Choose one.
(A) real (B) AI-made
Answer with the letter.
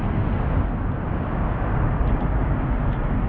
A